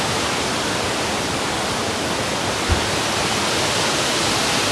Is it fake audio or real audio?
real